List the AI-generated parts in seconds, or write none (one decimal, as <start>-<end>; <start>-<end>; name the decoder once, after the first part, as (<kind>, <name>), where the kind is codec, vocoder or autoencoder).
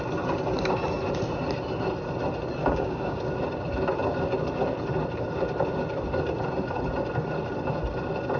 2.6-3.2 (codec, DAC)